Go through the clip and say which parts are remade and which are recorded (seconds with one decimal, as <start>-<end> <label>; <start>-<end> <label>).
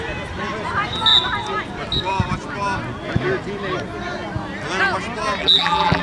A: 0.0-5.4 recorded; 5.4-6.0 remade